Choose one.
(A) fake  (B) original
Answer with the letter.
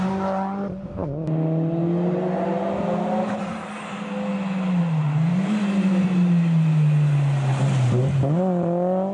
B